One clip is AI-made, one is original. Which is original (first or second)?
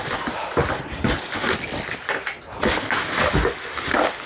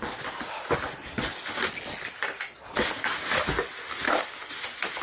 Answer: second